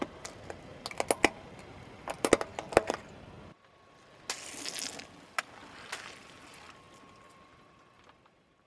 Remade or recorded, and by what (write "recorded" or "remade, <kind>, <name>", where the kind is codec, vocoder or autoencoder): recorded